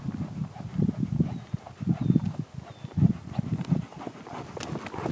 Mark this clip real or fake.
real